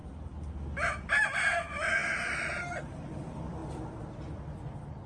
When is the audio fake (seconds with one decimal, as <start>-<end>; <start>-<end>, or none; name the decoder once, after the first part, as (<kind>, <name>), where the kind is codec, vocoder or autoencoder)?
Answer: none